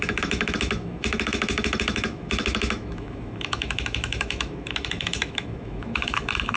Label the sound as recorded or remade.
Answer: remade